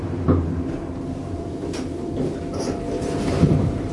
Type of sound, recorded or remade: remade